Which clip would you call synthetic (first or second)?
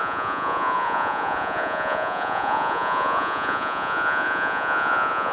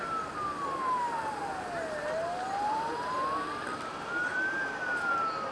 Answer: first